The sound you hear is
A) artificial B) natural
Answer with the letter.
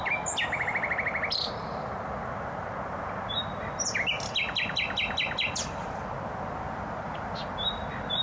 B